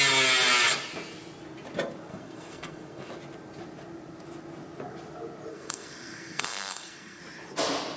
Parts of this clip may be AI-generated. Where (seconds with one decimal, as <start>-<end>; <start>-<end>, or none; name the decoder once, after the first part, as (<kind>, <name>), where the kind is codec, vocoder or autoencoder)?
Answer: 2.1-3.1 (codec, SNAC); 5.5-7.2